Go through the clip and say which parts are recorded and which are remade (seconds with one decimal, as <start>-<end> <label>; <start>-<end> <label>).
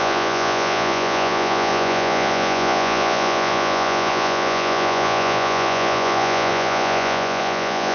0.0-7.9 remade